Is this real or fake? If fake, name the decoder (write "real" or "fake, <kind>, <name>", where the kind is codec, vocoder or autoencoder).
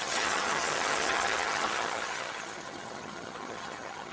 fake, vocoder, HiFi-GAN